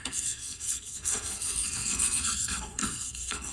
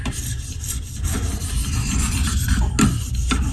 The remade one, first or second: first